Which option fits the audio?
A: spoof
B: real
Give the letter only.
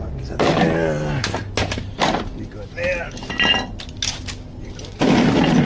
B